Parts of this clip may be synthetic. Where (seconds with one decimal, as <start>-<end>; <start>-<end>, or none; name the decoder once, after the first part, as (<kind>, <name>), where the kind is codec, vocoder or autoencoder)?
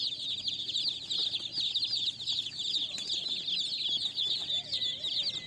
none